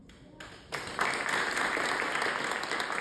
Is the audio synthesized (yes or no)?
no